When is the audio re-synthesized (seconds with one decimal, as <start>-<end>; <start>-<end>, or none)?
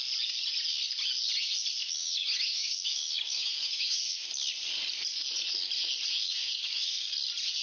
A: 1.8-4.3; 6.2-7.1